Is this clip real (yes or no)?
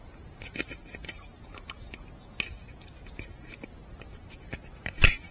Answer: yes